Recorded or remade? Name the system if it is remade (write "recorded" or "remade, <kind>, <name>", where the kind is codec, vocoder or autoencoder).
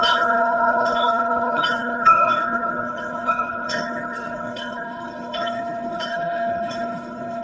remade, codec, HILCodec